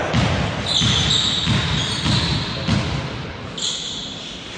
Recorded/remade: recorded